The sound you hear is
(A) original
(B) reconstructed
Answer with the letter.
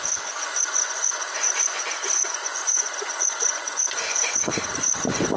B